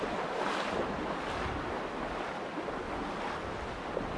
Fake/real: real